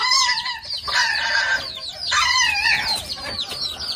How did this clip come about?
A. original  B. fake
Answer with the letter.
A